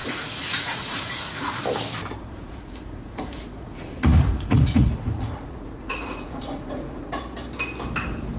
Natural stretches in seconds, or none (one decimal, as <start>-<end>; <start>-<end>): 1.6-2.2; 7.2-8.4